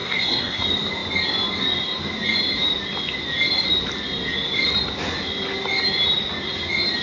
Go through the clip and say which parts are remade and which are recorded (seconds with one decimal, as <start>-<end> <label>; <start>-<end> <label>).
0.0-0.6 remade; 0.6-7.0 recorded